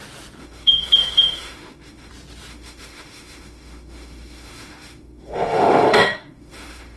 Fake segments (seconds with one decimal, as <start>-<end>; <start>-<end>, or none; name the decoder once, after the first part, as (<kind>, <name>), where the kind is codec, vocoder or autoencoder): 0.4-2.1 (autoencoder, DAC-VAE); 2.5-7.0